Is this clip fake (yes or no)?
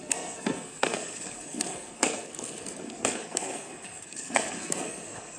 yes